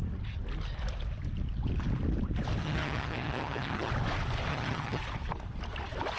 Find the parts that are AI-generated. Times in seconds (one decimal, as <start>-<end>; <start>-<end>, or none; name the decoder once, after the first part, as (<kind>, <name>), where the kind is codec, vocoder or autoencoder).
2.6-3.9 (vocoder, HiFi-GAN); 4.5-5.0